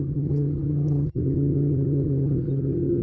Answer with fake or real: fake